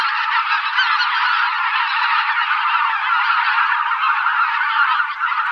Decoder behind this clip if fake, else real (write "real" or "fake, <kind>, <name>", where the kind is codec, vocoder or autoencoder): real